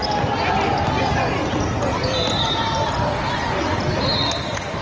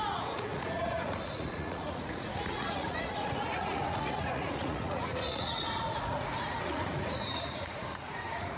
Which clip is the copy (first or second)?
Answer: second